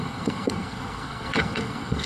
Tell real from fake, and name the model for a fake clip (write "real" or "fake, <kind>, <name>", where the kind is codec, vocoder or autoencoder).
fake, codec, SNAC